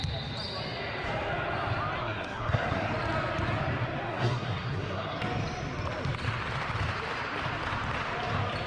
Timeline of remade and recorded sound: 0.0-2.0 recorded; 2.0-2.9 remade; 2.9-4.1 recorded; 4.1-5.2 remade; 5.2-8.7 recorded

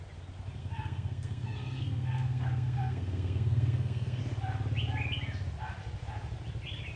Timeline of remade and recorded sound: 0.0-0.6 recorded; 0.6-4.2 remade; 4.2-7.0 recorded

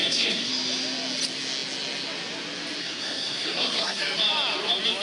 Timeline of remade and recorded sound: 0.0-0.5 remade; 0.5-2.8 recorded; 2.8-4.0 remade; 4.0-5.0 recorded